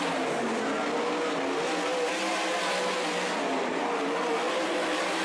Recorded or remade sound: recorded